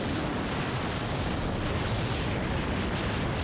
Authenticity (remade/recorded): recorded